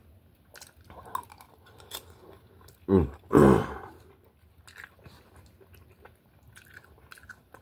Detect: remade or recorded recorded